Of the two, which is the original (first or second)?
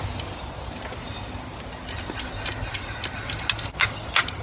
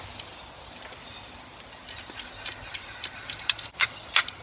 first